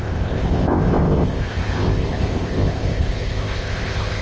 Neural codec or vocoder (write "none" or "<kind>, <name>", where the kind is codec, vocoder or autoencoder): codec, ZipCodec